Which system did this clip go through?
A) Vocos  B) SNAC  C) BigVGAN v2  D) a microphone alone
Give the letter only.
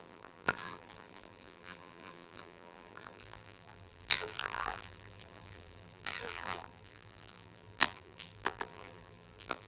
C